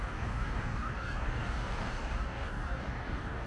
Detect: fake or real fake